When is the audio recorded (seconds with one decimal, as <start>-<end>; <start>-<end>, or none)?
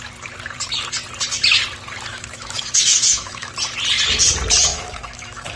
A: 0.0-2.1; 3.5-4.7